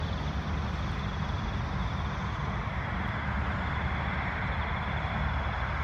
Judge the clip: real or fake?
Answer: real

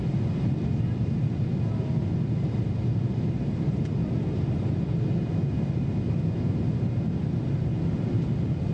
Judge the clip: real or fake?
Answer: real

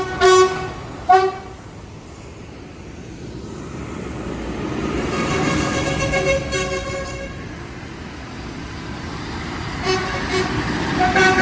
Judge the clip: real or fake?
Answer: real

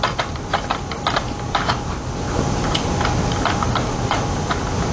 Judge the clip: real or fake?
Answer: fake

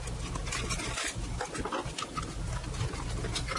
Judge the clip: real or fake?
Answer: real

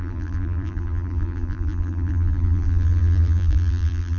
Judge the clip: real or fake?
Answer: fake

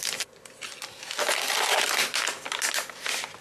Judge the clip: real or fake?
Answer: real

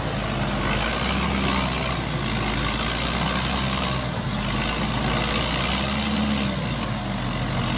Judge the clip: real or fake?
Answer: real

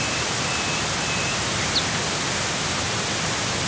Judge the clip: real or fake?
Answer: real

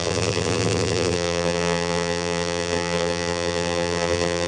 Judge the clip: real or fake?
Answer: fake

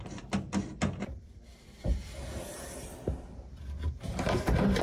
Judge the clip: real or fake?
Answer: real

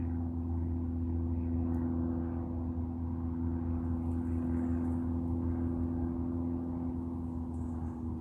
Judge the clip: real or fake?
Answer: real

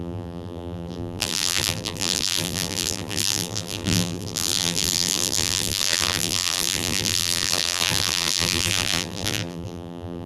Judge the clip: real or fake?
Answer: fake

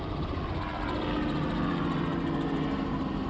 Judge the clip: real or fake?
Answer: real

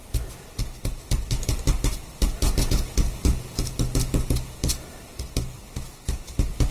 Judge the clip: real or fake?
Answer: real